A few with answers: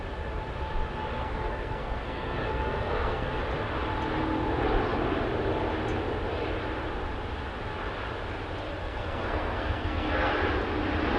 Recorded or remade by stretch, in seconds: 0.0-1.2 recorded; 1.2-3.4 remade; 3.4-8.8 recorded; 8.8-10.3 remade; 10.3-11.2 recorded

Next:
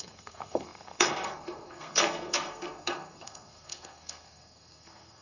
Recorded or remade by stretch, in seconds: 0.0-5.2 remade

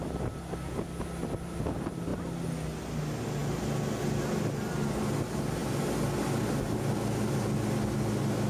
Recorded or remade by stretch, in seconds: 0.0-8.5 recorded

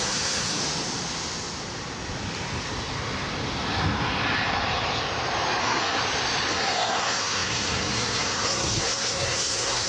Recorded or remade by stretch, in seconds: 0.0-0.6 remade; 0.6-5.6 recorded; 5.6-6.0 remade; 6.0-6.5 recorded; 6.5-9.9 remade

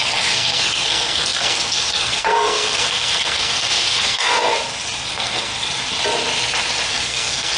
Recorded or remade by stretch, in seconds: 0.0-4.5 remade; 4.5-5.1 recorded; 5.1-5.5 remade; 5.5-6.9 recorded; 6.9-7.6 remade

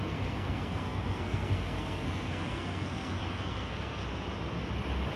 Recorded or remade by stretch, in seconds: 0.0-4.0 remade; 4.0-5.2 recorded

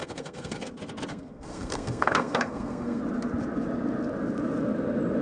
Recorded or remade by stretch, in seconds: 0.0-0.7 remade; 0.7-1.1 recorded; 1.1-3.0 remade; 3.0-5.2 recorded

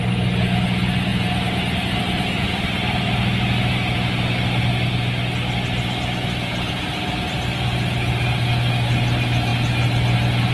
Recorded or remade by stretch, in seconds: 0.0-10.5 recorded